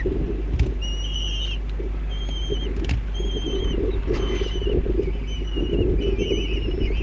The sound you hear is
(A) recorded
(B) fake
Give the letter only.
A